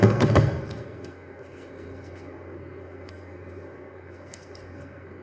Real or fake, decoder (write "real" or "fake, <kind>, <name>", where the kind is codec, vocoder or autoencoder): fake, codec, SNAC